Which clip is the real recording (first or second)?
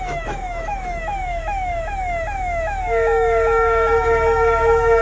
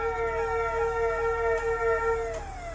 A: second